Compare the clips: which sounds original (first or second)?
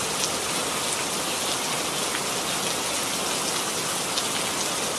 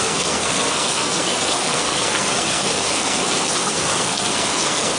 first